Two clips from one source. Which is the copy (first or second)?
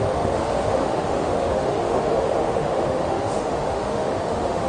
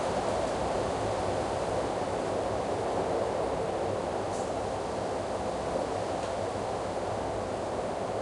first